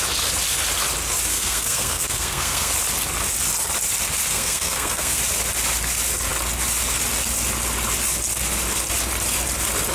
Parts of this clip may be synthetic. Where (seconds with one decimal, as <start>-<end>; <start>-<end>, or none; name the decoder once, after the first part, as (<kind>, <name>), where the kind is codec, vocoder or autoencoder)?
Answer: 1.3-2.7 (codec, SNAC); 4.3-5.2